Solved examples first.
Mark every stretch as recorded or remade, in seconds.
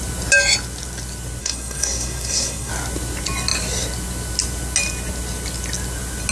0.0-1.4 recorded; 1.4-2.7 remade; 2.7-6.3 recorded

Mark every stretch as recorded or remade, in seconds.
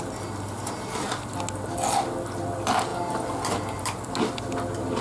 0.0-5.0 recorded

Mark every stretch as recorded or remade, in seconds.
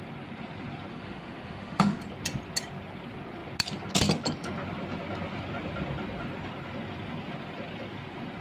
0.0-0.9 recorded; 0.9-2.0 remade; 2.0-8.4 recorded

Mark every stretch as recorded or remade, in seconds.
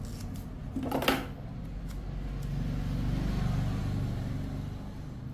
0.0-5.3 recorded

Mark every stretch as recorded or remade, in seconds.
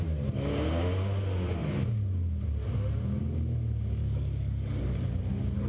0.0-4.0 recorded; 4.0-4.8 remade; 4.8-5.7 recorded